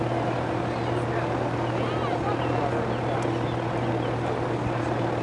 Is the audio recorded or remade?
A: recorded